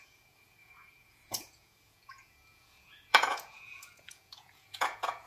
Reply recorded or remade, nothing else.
remade